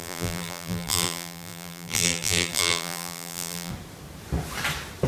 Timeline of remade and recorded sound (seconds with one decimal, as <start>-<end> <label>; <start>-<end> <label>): 0.0-3.7 remade; 3.7-5.1 recorded